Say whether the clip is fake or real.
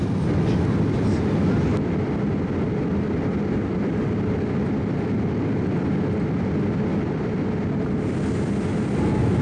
real